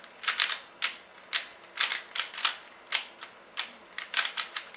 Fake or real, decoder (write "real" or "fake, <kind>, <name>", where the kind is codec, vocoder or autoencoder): real